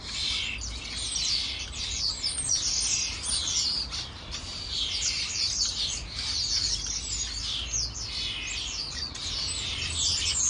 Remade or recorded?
recorded